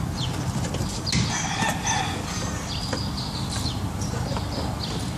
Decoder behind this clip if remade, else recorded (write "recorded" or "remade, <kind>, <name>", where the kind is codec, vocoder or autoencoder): recorded